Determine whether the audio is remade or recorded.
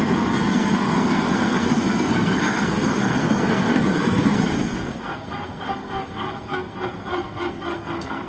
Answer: remade